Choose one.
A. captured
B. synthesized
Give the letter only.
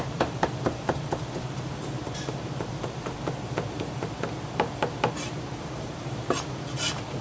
B